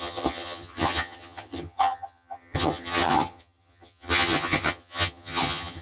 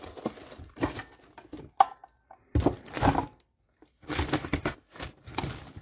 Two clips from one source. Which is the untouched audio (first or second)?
second